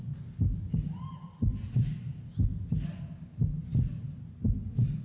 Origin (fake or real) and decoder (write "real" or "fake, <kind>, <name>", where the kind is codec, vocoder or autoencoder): real